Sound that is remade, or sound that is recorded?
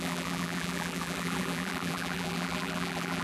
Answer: remade